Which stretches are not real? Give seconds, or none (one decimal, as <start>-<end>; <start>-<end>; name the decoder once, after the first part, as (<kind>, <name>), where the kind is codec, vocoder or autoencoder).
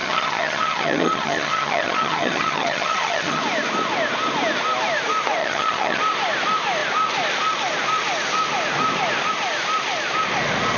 0.0-3.4 (vocoder, HiFi-GAN); 5.4-6.0